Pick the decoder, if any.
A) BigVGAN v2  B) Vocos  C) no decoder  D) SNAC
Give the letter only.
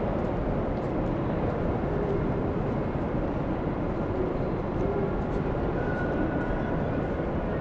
A